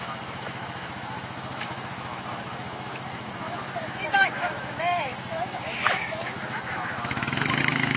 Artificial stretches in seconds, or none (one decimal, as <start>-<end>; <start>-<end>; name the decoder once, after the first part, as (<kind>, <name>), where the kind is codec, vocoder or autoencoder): 0.0-8.0 (autoencoder, DAC-VAE)